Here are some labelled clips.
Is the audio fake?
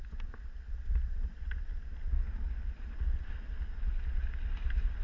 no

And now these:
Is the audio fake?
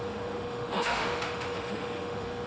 yes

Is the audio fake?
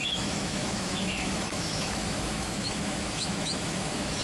yes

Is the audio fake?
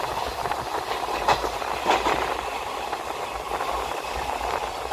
no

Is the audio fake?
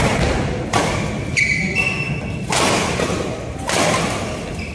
no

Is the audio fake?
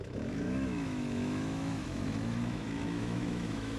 yes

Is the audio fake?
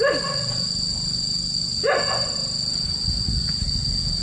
no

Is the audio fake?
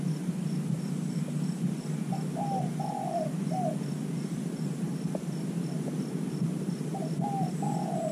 no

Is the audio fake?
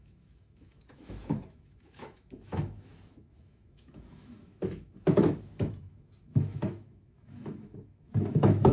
yes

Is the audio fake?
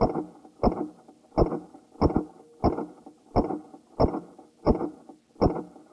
no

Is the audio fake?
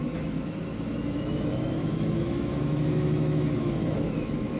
yes